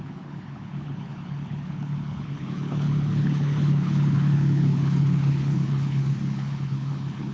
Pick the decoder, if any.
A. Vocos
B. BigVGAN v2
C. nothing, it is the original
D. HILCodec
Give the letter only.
D